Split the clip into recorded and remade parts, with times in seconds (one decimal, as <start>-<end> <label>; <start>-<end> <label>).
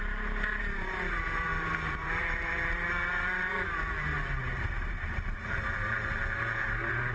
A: 0.0-7.1 remade